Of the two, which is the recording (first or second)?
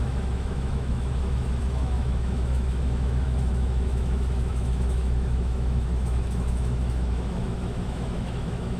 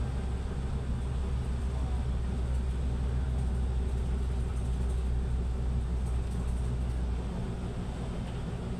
second